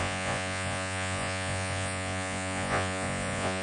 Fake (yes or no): yes